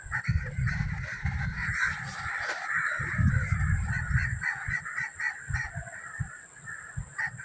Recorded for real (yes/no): yes